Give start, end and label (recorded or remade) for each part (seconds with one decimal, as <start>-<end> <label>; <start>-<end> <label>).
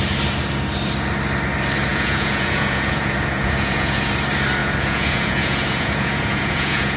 0.0-1.9 recorded; 1.9-4.1 remade; 4.1-4.6 recorded; 4.6-7.0 remade